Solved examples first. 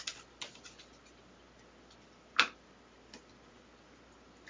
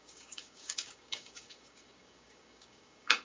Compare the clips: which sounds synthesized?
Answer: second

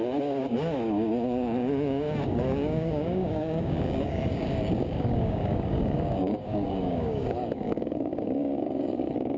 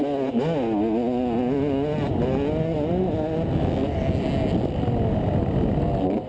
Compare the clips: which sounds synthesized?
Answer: first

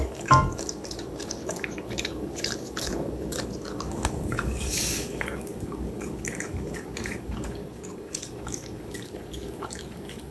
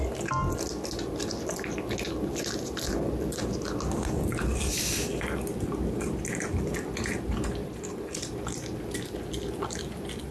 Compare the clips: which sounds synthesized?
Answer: first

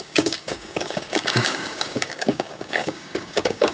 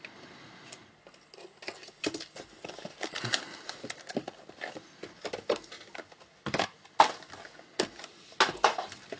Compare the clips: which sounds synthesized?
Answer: first